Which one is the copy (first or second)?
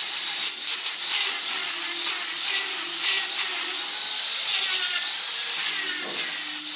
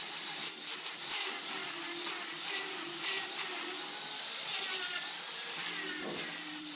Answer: second